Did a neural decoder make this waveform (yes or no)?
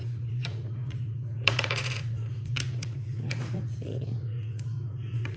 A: yes